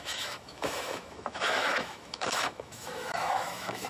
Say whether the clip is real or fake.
fake